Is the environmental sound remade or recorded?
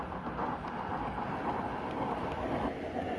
recorded